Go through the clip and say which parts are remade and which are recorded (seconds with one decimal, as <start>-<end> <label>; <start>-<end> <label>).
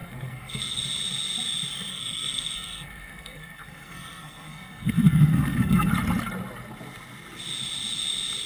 0.0-0.8 remade; 0.8-1.9 recorded; 1.9-5.9 remade; 5.9-8.5 recorded